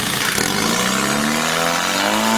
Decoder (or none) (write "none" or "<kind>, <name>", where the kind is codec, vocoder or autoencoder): none